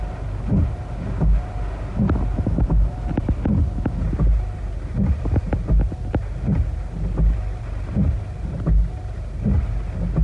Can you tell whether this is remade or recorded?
recorded